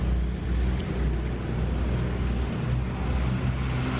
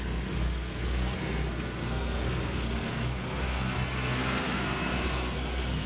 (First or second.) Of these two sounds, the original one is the first